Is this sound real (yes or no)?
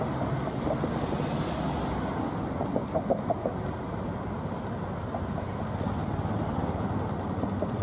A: yes